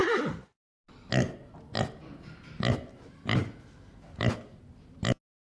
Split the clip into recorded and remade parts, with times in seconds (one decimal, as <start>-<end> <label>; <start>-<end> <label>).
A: 0.0-5.6 recorded